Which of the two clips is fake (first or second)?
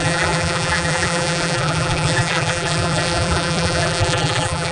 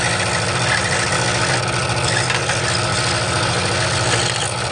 first